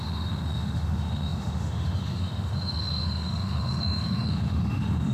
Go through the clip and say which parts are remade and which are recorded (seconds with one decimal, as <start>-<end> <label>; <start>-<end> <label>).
0.0-5.1 remade